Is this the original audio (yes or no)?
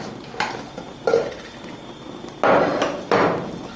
yes